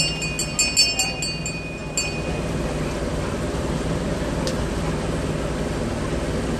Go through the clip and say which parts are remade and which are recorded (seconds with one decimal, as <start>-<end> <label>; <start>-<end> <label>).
0.0-6.6 recorded